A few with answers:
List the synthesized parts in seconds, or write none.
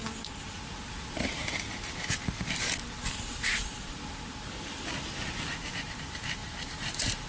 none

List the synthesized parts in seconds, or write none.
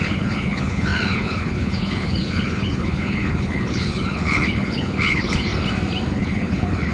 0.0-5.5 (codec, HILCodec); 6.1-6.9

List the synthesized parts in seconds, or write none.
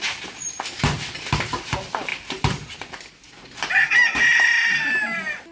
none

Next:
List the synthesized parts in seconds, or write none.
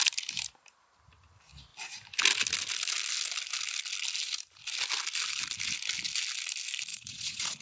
6.9-7.6 (vocoder, Vocos)